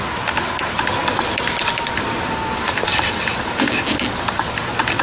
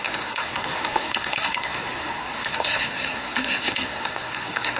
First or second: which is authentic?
first